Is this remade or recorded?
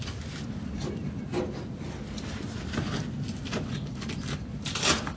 recorded